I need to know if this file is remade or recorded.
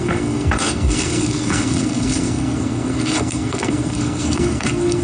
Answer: remade